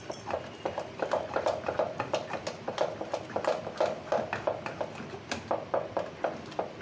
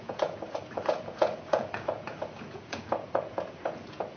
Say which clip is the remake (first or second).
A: second